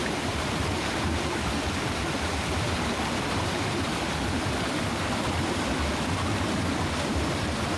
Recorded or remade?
recorded